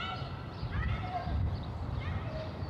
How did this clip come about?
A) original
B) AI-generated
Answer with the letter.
B